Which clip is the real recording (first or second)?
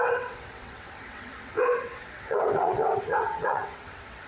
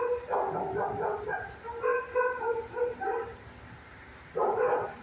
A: second